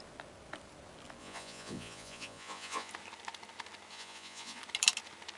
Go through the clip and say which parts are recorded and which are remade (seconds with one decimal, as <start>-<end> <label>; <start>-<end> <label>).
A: 0.0-1.2 recorded; 1.2-2.9 remade; 2.9-3.9 recorded; 3.9-4.6 remade; 4.6-5.4 recorded